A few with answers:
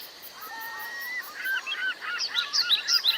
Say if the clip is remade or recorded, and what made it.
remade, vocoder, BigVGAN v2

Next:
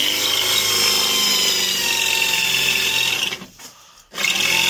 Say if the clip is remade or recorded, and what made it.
recorded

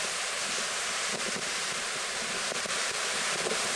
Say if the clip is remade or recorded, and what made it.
remade, vocoder, BigVGAN v2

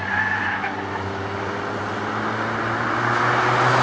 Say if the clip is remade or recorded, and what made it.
recorded